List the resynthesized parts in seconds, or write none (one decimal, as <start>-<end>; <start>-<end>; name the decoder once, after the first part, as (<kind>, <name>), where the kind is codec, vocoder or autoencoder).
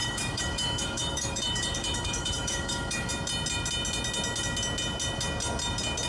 0.0-3.1 (autoencoder, DAC-VAE)